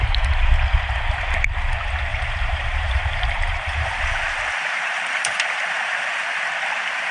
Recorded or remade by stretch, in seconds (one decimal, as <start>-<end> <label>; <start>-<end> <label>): 0.0-2.1 recorded; 2.1-6.4 remade; 6.4-7.1 recorded